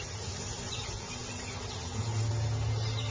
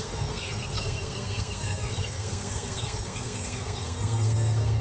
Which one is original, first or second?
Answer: first